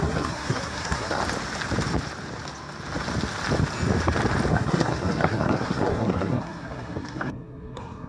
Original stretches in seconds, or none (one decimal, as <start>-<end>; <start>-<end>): 1.2-4.5